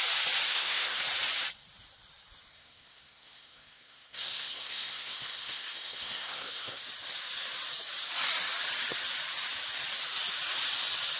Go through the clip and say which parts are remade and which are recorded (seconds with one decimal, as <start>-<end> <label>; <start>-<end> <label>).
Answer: 0.0-0.5 recorded; 0.5-1.0 remade; 1.0-2.5 recorded; 2.5-6.8 remade; 6.8-11.2 recorded